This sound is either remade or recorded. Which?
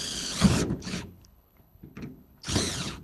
remade